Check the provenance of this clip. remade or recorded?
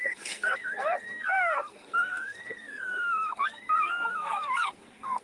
remade